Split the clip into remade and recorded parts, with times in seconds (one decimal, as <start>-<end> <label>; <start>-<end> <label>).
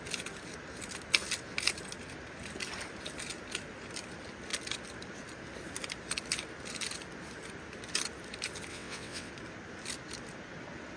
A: 0.0-8.7 recorded; 8.7-9.3 remade; 9.3-11.0 recorded